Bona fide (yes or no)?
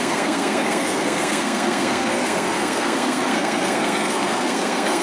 no